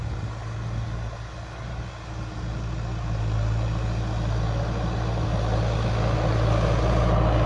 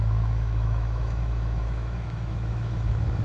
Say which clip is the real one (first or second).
first